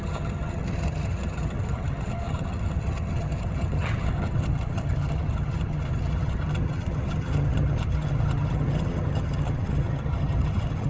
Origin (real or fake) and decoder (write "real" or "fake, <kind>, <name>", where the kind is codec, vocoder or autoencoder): fake, vocoder, HiFi-GAN